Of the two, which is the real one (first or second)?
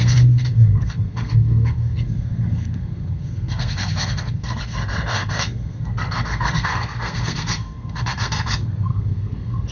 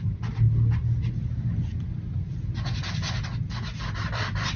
second